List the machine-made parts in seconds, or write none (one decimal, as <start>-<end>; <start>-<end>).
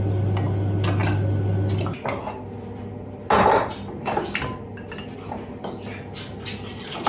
none